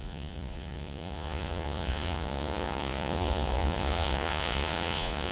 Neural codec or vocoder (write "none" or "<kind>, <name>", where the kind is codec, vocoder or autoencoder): vocoder, Vocos